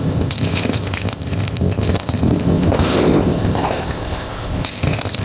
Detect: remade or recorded remade